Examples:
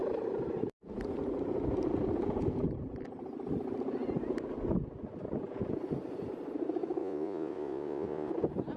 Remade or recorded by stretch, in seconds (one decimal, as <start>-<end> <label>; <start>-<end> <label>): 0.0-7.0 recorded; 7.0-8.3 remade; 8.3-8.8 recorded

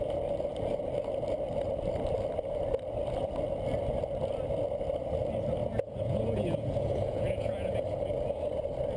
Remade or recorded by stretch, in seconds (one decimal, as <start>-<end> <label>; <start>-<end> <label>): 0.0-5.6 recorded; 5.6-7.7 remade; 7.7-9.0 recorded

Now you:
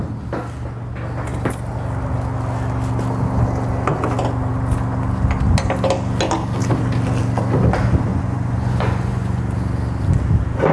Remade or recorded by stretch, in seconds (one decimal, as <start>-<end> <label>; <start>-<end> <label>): 0.0-8.1 recorded; 8.1-9.4 remade; 9.4-10.7 recorded

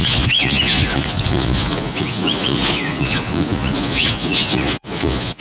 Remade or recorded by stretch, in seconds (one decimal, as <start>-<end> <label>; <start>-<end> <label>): 0.0-5.4 remade

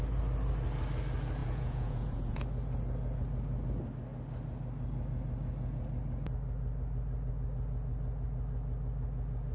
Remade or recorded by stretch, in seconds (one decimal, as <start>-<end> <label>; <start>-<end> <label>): 0.0-1.4 recorded; 1.4-2.4 remade; 2.4-9.5 recorded

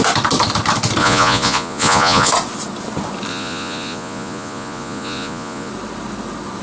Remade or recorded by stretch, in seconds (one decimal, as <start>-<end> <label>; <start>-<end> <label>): 0.0-1.0 recorded; 1.0-2.3 remade; 2.3-3.3 recorded; 3.3-5.7 remade; 5.7-6.6 recorded